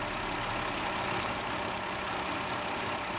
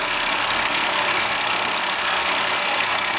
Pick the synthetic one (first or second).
second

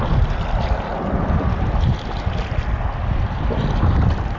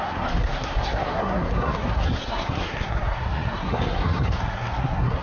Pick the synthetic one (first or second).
second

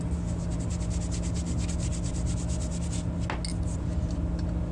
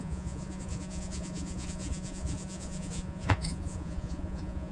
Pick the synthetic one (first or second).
second